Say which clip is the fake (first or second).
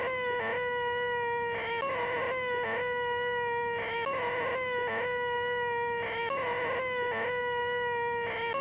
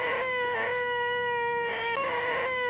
second